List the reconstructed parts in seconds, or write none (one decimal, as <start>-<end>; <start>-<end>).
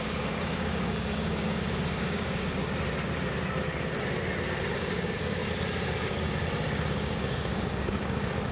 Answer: 0.0-2.6; 4.7-5.4; 6.0-6.4; 6.9-8.5